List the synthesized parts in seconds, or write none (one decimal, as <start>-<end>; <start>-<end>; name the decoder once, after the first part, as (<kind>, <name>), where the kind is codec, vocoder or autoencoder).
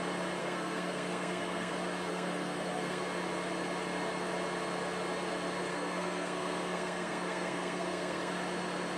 0.4-1.7 (codec, SNAC); 2.1-3.0; 5.7-8.3